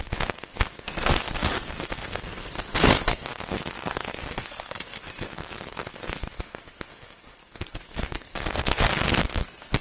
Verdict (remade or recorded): remade